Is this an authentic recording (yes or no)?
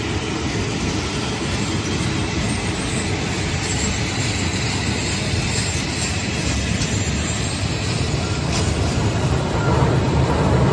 yes